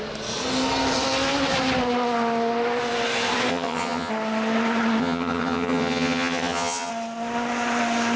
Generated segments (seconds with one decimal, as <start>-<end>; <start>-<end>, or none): 3.5-4.1; 5.0-6.9